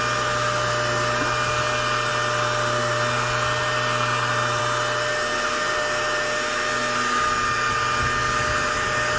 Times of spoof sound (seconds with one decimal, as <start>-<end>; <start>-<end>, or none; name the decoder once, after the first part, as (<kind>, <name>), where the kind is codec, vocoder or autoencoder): none